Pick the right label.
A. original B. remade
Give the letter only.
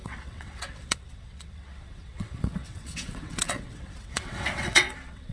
B